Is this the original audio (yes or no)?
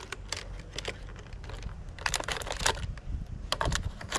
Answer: yes